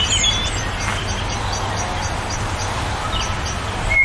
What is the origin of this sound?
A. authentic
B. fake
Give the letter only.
A